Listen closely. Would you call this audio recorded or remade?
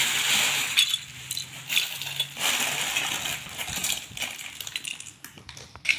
recorded